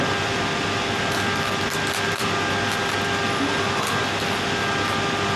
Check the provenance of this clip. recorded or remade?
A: recorded